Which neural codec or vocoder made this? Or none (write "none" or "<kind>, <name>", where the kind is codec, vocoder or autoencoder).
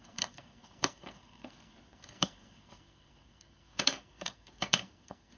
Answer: codec, SNAC